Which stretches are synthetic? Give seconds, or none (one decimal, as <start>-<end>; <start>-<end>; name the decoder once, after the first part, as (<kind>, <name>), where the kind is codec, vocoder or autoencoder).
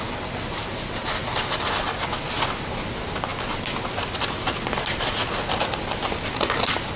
none